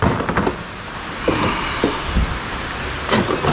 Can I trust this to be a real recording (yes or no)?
yes